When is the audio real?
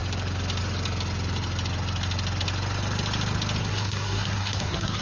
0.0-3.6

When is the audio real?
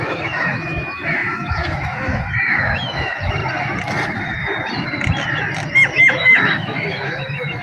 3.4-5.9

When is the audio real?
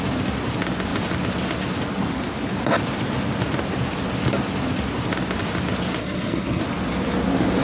0.0-6.0; 6.6-7.6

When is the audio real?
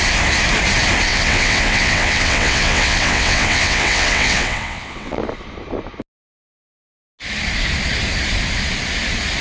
0.0-1.1; 5.2-9.4